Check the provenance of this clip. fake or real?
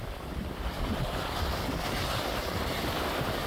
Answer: real